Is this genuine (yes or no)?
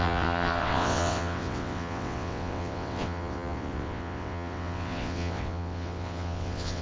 no